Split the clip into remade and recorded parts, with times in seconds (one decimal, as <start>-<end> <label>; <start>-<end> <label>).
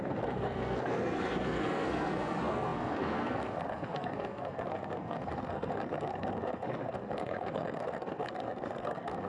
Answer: 0.0-9.3 remade